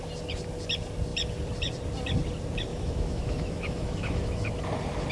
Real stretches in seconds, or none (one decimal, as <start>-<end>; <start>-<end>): 0.0-2.7; 4.5-5.1